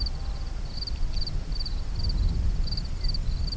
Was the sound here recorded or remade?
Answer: recorded